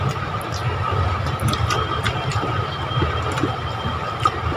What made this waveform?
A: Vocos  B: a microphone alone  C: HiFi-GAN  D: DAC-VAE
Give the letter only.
B